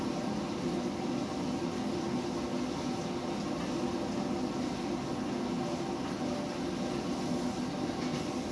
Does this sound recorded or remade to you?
recorded